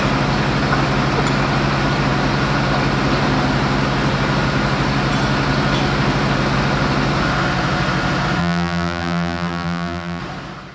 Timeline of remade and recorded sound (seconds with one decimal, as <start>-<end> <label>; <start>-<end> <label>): 0.0-8.4 recorded; 8.4-10.2 remade; 10.2-10.7 recorded